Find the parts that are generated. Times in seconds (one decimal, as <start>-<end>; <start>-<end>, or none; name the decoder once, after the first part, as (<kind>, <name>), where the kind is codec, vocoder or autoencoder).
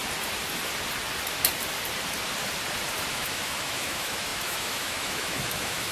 3.1-5.9 (autoencoder, DAC-VAE)